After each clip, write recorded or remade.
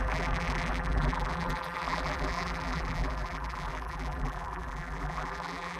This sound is remade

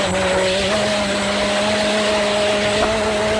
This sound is recorded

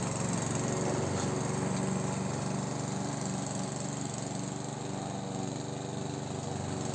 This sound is recorded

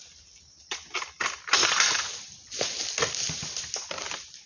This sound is recorded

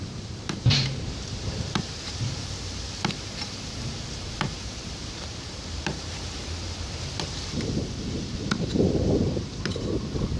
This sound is remade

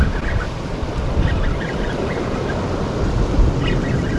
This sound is recorded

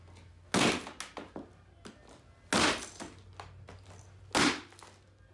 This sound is recorded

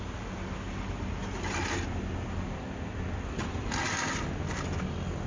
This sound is recorded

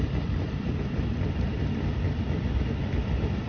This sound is remade